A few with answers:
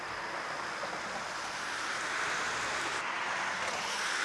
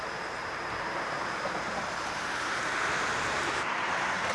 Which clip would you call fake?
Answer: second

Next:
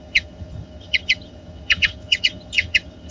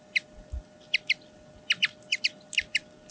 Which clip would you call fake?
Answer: first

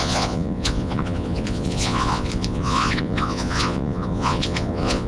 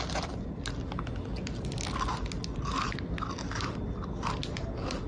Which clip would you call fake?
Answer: first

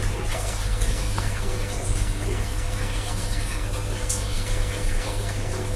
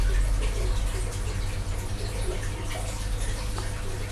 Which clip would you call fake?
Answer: first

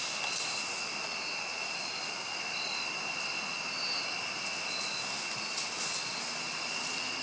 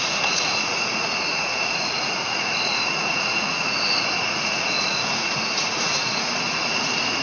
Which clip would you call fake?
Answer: second